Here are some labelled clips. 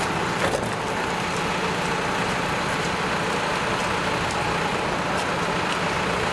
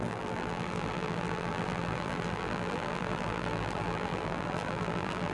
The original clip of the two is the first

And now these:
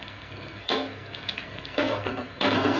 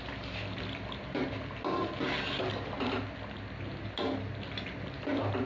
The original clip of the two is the second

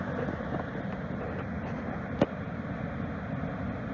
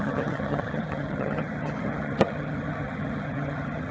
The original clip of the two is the first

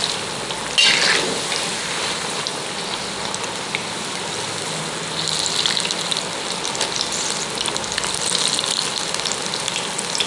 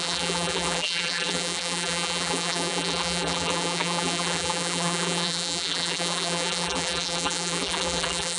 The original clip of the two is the first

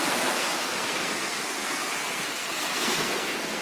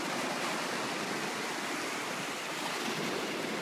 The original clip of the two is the second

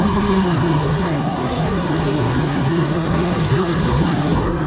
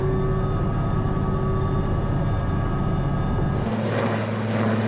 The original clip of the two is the second